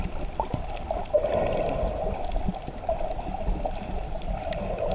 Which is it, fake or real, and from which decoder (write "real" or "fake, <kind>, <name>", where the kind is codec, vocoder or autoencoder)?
real